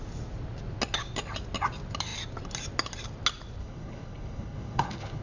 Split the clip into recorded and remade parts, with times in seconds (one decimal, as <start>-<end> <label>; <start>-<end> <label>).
0.0-3.6 recorded; 3.6-5.2 remade

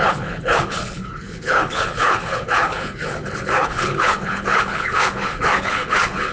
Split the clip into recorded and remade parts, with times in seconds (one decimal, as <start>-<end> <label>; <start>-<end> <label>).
0.0-6.3 remade

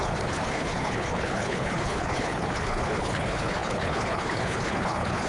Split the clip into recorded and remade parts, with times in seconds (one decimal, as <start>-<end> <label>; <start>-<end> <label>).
0.0-5.3 remade

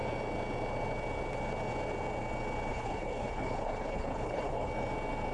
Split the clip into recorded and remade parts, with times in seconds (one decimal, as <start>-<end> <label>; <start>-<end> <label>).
0.0-2.7 recorded; 2.7-4.7 remade; 4.7-5.3 recorded

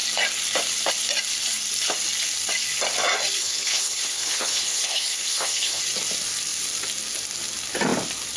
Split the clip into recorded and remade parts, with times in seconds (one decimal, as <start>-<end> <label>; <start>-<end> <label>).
0.0-3.4 recorded; 3.4-5.8 remade; 5.8-8.4 recorded